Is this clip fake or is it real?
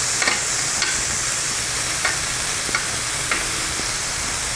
fake